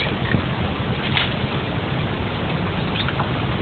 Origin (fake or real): real